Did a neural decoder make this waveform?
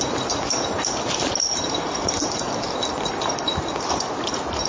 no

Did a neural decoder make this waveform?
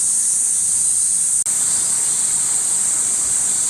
no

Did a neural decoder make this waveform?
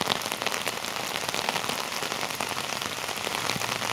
yes